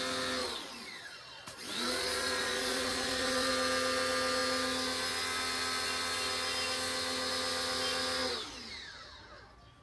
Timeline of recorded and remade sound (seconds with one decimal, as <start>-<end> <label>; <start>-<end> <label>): 0.0-0.4 recorded; 0.4-3.5 remade; 3.5-9.8 recorded